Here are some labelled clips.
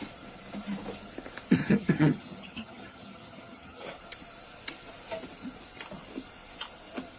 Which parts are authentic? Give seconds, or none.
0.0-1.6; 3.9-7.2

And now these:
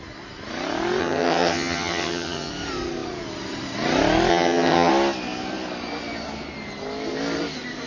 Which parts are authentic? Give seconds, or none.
0.0-1.0; 2.5-4.3; 4.9-7.9